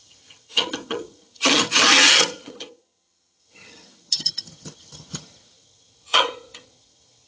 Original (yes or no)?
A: no